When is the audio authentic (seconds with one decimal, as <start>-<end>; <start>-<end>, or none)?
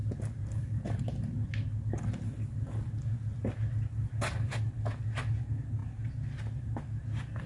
1.0-7.5